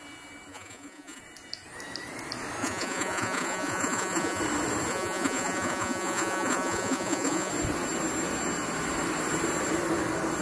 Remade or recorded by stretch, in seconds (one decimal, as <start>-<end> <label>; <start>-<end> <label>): 0.0-0.5 recorded; 0.5-1.2 remade; 1.2-2.6 recorded; 2.6-4.4 remade; 4.4-4.9 recorded; 4.9-7.5 remade; 7.5-10.4 recorded